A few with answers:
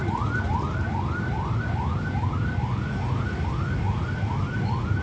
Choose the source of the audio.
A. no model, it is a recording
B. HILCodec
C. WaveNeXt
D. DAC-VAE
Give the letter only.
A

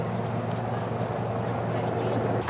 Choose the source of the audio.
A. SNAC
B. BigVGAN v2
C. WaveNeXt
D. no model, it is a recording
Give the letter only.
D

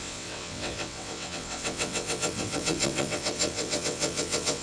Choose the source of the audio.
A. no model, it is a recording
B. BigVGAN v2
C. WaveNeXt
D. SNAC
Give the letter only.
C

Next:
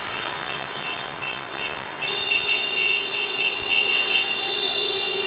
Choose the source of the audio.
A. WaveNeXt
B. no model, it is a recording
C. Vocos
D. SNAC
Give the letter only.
A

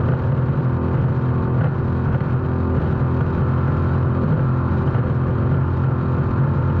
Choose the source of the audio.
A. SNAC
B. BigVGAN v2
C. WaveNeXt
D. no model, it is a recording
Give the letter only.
D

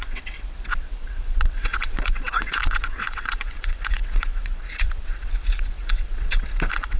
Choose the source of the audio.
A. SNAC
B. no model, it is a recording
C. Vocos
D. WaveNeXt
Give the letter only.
D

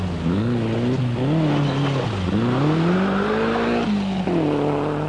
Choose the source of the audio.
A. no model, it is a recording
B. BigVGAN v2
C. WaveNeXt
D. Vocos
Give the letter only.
A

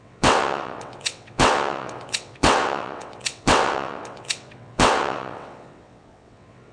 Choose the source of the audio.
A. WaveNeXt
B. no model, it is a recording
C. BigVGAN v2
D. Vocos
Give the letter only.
A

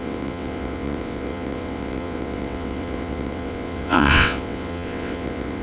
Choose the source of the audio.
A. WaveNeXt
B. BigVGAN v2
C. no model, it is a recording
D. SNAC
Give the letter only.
A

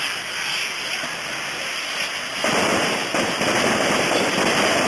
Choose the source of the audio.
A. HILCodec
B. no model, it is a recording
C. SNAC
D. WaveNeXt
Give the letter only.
B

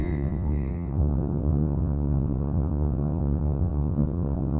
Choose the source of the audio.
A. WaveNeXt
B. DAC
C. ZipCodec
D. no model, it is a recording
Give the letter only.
A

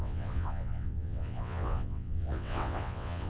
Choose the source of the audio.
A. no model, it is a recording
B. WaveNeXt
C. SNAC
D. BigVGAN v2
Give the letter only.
B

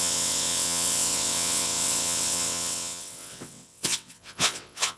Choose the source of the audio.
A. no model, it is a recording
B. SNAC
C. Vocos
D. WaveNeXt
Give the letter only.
D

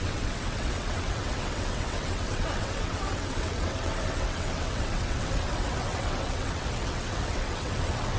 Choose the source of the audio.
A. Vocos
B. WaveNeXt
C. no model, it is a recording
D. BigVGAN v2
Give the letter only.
B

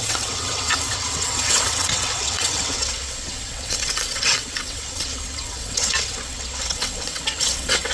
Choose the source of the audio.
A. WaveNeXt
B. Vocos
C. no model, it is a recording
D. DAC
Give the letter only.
A